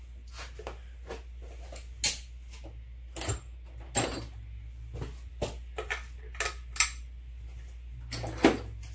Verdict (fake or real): real